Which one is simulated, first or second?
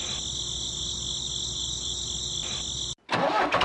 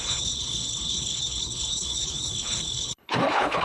second